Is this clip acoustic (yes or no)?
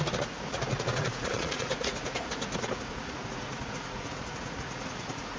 no